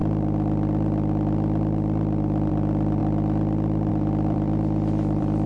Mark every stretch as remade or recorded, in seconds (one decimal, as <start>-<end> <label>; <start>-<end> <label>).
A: 0.0-2.5 recorded; 2.5-5.5 remade